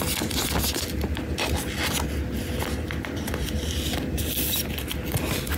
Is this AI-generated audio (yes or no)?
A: no